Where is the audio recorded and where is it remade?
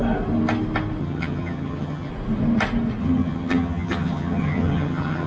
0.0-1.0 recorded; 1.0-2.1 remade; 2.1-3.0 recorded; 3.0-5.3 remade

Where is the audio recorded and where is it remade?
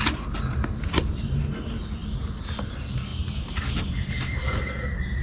0.0-5.2 recorded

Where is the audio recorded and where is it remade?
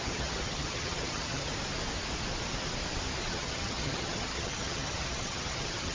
0.0-1.5 remade; 1.5-3.3 recorded; 3.3-5.9 remade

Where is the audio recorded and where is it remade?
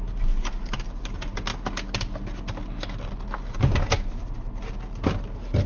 0.0-5.7 recorded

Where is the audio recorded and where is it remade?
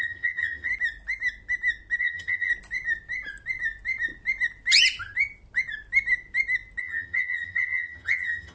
0.0-0.7 remade; 0.7-2.0 recorded; 2.0-2.5 remade; 2.5-6.8 recorded; 6.8-8.5 remade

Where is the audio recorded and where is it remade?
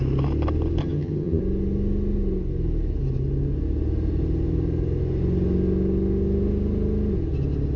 0.0-0.8 recorded; 0.8-1.4 remade; 1.4-7.8 recorded